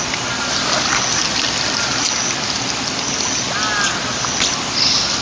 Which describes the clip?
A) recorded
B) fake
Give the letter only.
A